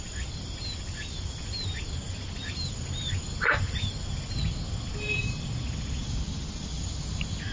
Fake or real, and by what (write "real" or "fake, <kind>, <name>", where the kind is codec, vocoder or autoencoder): real